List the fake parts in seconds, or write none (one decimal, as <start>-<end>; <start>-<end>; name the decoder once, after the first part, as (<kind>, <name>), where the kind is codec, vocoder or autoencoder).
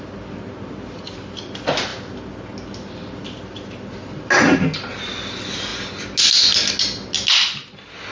none